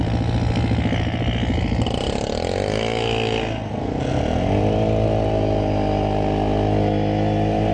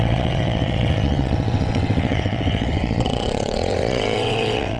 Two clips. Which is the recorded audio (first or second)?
first